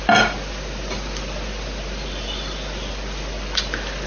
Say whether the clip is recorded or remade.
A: recorded